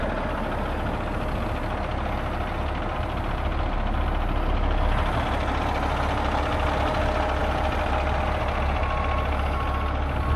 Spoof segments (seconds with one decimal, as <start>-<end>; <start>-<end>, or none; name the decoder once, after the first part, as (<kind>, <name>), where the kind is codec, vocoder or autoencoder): 7.4-8.2 (vocoder, BigVGAN v2)